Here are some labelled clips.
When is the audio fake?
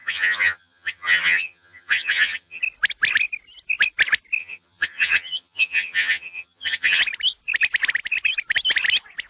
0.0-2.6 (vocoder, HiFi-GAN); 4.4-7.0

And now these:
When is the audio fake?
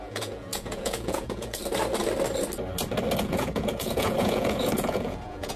0.0-1.6 (vocoder, Vocos); 3.2-5.6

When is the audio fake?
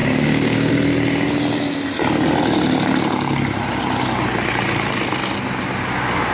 0.0-0.7 (codec, DAC)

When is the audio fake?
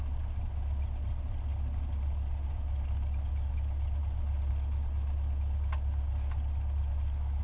none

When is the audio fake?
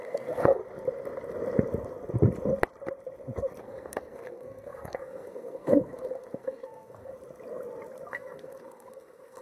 0.0-0.6 (codec, SNAC); 3.6-7.1; 8.1-9.4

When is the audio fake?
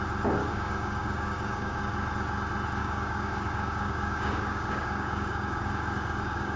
0.4-1.9 (codec, DAC); 2.8-6.6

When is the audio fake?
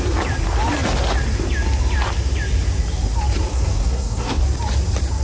3.5-4.4 (codec, SNAC)